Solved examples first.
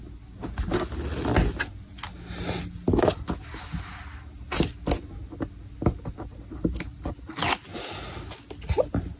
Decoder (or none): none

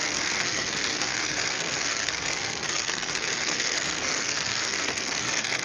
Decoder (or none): codec, SNAC